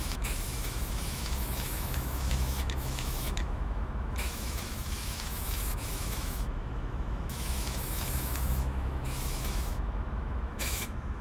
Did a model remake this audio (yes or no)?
yes